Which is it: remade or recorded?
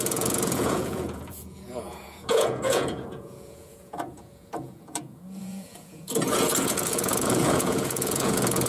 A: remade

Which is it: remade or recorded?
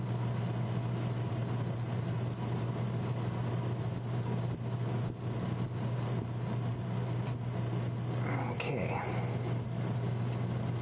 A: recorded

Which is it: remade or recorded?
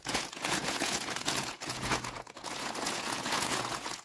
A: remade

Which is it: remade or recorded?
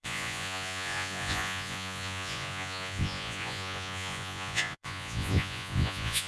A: remade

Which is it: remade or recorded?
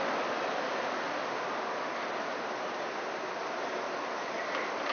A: recorded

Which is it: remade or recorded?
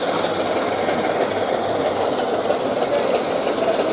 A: recorded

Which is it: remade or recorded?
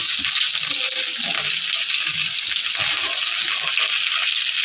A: recorded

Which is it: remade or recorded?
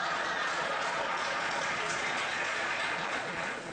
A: remade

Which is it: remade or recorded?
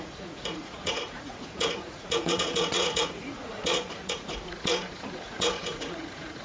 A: remade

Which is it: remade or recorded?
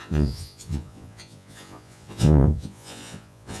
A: remade